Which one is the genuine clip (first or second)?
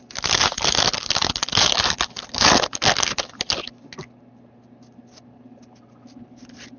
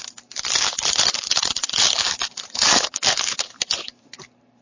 first